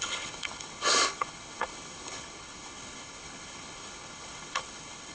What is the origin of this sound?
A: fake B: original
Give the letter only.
A